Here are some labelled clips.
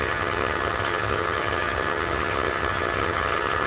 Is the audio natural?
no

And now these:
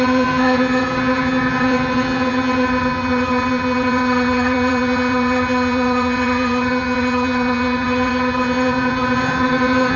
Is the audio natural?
no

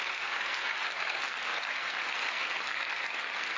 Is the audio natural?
no